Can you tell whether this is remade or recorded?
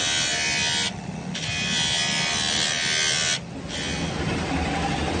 recorded